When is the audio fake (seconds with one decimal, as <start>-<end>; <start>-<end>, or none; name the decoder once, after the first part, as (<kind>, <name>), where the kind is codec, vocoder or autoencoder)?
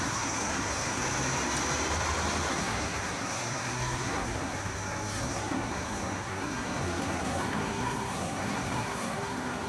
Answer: 0.0-1.0 (codec, SNAC); 2.5-9.7